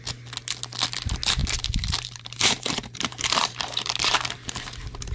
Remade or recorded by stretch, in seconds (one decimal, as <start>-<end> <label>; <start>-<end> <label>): 0.0-1.4 recorded; 1.4-4.5 remade; 4.5-5.1 recorded

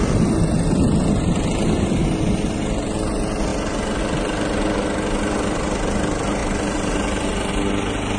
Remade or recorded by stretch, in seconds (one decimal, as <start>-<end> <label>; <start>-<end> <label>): 0.0-8.2 recorded

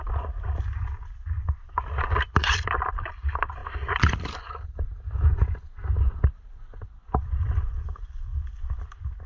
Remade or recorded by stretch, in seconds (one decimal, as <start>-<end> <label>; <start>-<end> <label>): 0.0-3.6 remade; 3.6-6.3 recorded; 6.3-9.3 remade

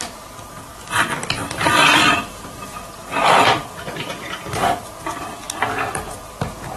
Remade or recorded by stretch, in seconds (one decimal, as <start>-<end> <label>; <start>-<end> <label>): 0.0-0.7 recorded; 0.7-4.1 remade; 4.1-6.8 recorded

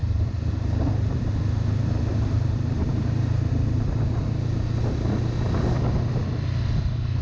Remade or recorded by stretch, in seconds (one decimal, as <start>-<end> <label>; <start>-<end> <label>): 0.0-0.9 remade; 0.9-2.1 recorded; 2.1-3.5 remade; 3.5-7.2 recorded

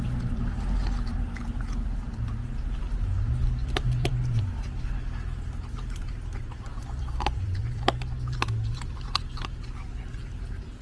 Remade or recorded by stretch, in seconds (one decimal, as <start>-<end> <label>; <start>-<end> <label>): 0.0-3.6 recorded; 3.6-4.1 remade; 4.1-6.7 recorded; 6.7-7.8 remade; 7.8-10.8 recorded

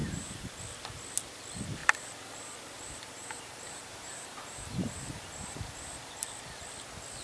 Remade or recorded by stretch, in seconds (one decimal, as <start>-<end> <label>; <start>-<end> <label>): 0.0-0.6 remade; 0.6-1.8 recorded; 1.8-6.1 remade; 6.1-7.2 recorded

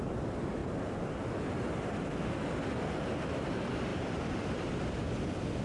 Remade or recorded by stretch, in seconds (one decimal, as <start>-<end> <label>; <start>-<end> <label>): 0.0-0.6 remade; 0.6-3.3 recorded; 3.3-5.6 remade